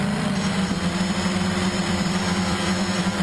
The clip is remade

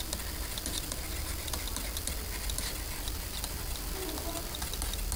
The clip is recorded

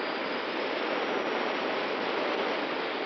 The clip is recorded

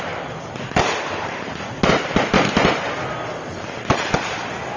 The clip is recorded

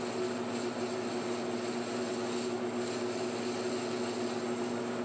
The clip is recorded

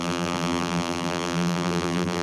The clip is remade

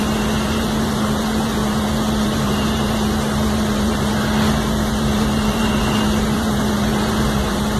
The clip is remade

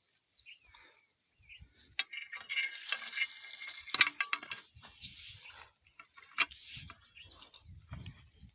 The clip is recorded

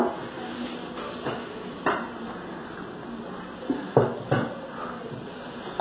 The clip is recorded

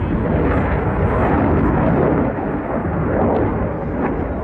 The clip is recorded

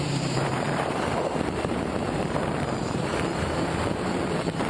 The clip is remade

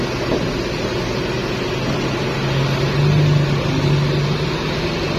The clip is recorded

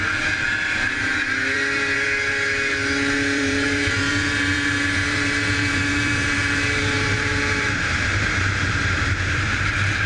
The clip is remade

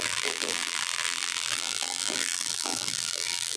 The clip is remade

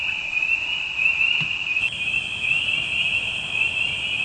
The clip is recorded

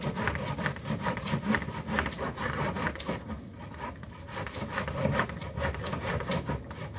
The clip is recorded